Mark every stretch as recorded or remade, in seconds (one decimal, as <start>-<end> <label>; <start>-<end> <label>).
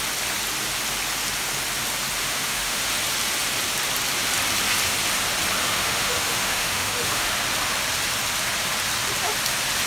0.0-2.2 recorded; 2.2-2.8 remade; 2.8-5.6 recorded; 5.6-7.3 remade; 7.3-9.9 recorded